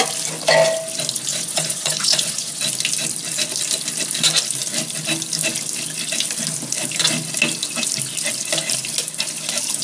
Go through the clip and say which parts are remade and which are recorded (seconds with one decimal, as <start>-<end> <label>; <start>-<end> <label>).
0.0-1.3 recorded; 1.3-2.6 remade; 2.6-9.8 recorded